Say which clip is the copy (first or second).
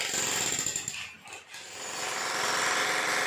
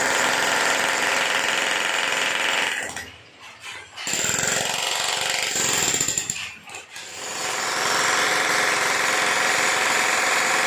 second